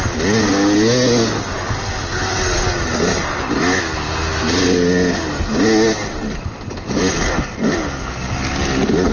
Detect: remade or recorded recorded